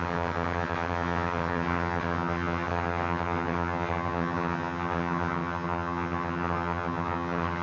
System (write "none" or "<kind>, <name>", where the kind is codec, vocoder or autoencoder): vocoder, HiFi-GAN